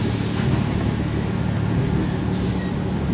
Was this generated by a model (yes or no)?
no